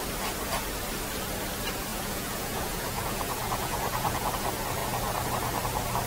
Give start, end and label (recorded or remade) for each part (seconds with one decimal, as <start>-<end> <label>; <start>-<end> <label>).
0.0-1.9 recorded; 1.9-4.3 remade; 4.3-6.1 recorded